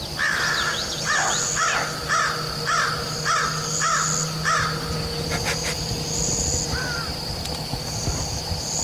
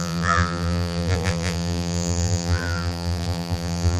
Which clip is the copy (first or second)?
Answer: second